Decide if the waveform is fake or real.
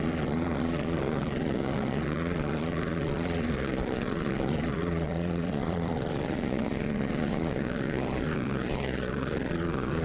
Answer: fake